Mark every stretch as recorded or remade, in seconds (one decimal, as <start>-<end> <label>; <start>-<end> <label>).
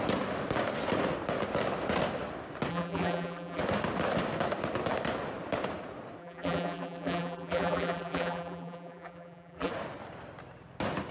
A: 0.0-2.7 recorded; 2.7-3.6 remade; 3.6-6.2 recorded; 6.2-9.7 remade; 9.7-11.1 recorded